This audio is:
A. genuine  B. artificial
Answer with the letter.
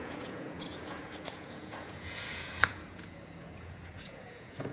B